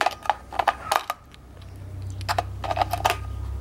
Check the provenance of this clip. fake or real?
real